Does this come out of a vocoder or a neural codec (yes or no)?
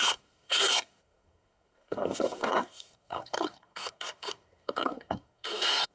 yes